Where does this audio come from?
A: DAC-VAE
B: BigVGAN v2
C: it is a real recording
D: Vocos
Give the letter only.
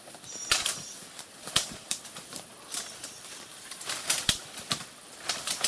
B